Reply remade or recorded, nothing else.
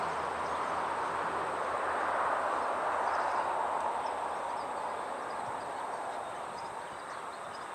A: recorded